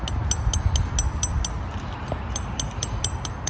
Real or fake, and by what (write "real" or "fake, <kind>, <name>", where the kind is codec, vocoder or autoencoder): real